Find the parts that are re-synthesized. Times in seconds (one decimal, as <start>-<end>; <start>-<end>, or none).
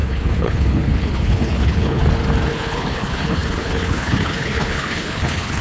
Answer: 0.0-2.0; 2.5-5.6